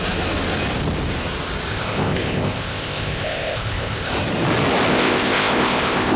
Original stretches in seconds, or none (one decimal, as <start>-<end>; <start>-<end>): 0.0-1.7; 4.1-4.9